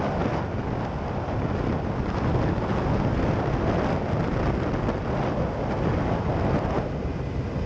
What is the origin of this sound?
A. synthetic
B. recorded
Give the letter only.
B